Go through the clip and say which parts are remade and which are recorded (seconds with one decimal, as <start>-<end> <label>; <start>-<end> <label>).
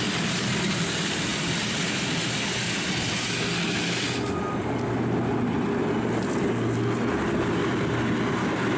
0.0-8.8 recorded